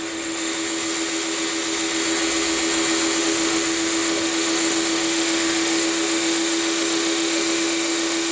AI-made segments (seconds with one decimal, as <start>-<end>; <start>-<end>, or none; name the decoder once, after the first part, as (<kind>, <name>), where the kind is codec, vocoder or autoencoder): 0.0-0.5 (autoencoder, DAC-VAE); 3.2-8.3